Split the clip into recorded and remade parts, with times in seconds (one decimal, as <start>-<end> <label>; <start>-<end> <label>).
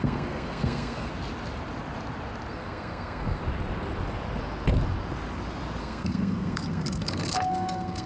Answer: 0.0-1.1 remade; 1.1-2.5 recorded; 2.5-3.4 remade; 3.4-5.8 recorded; 5.8-8.1 remade